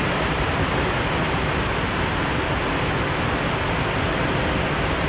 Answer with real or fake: real